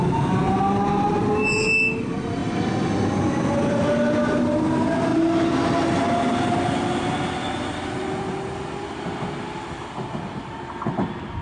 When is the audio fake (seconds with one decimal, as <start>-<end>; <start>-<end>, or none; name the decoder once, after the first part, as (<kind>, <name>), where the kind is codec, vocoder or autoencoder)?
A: none